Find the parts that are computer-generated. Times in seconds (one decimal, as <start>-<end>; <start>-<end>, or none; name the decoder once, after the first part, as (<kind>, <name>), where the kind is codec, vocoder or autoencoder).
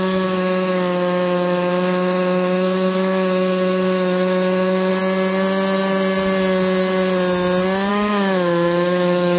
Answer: 0.0-4.9 (autoencoder, DAC-VAE); 7.9-9.4